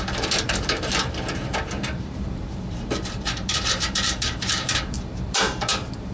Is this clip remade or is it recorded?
remade